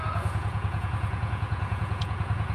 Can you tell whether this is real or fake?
fake